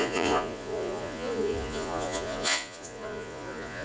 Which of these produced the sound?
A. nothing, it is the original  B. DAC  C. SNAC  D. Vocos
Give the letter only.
D